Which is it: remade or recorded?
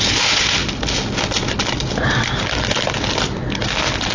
recorded